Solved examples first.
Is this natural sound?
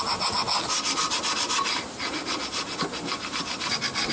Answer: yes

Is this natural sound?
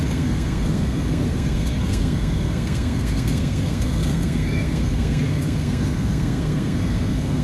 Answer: no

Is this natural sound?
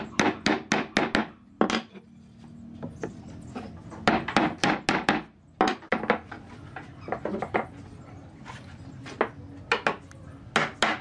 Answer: yes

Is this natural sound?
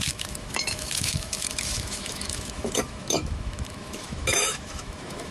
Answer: no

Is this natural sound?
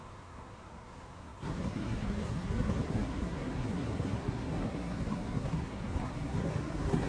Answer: no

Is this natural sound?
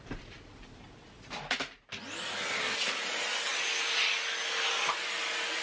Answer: yes